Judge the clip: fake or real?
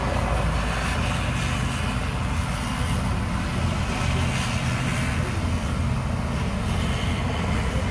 real